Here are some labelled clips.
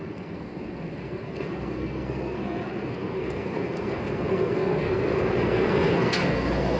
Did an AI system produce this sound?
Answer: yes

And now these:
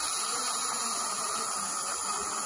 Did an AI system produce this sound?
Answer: yes